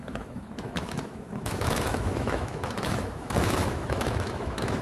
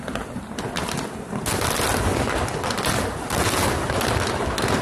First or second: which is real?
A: second